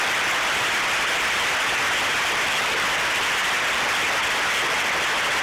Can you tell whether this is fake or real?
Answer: real